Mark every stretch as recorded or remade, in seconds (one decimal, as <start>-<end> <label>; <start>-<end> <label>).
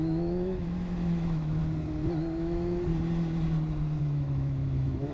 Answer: 0.0-1.6 remade; 1.6-2.4 recorded; 2.4-2.9 remade; 2.9-4.0 recorded; 4.0-5.1 remade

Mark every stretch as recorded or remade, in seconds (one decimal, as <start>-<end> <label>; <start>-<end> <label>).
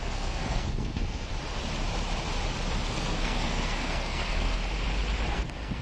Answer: 0.0-1.3 remade; 1.3-2.9 recorded; 2.9-4.6 remade; 4.6-5.3 recorded; 5.3-5.8 remade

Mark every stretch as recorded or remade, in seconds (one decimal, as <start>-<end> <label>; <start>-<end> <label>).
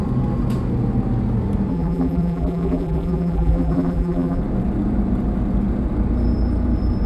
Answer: 0.0-1.7 recorded; 1.7-4.4 remade; 4.4-7.1 recorded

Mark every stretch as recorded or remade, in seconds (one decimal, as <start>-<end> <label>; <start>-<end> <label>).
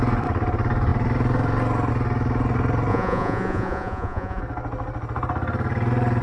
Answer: 0.0-2.9 recorded; 2.9-4.4 remade; 4.4-6.2 recorded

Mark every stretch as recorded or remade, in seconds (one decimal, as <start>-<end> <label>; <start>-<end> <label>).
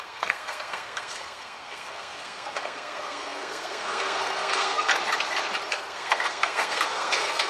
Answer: 0.0-4.9 remade; 4.9-5.7 recorded; 5.7-7.5 remade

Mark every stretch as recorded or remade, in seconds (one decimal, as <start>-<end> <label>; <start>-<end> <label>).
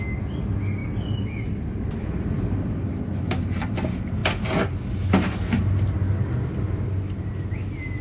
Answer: 0.0-8.0 recorded